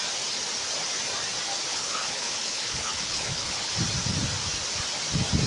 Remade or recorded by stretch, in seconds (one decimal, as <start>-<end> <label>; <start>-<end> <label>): 0.0-1.7 recorded; 1.7-3.7 remade; 3.7-5.5 recorded